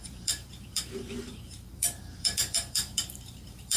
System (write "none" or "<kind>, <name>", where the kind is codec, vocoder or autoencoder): vocoder, BigVGAN v2